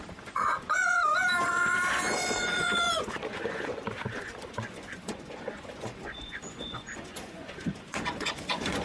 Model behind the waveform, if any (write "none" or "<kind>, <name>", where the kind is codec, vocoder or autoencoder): vocoder, Vocos